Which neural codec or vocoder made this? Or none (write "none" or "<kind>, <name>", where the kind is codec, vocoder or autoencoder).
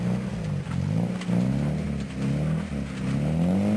none